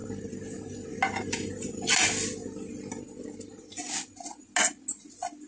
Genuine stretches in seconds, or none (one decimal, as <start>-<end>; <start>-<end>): 0.0-5.5